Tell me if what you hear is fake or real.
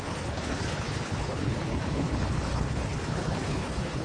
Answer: fake